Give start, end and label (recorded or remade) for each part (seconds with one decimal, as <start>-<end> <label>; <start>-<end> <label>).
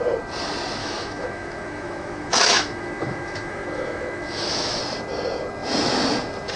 0.0-0.8 recorded; 0.8-4.8 remade; 4.8-6.6 recorded